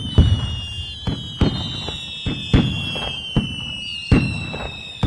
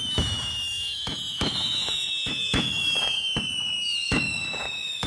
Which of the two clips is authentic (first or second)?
first